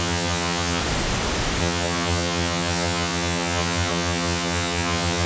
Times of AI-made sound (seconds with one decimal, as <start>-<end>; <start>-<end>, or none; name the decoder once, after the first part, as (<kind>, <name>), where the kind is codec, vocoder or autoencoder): 0.0-0.8 (vocoder, HiFi-GAN); 1.6-5.3